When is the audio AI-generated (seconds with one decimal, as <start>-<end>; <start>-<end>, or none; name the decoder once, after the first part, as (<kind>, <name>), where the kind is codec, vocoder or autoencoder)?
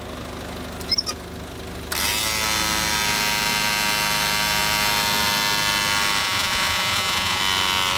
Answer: 6.2-7.4 (vocoder, Vocos)